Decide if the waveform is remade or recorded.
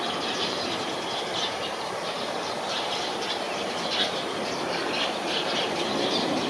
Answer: remade